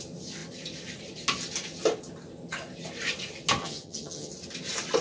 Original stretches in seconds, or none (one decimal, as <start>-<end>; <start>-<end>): 0.0-3.6; 4.3-5.0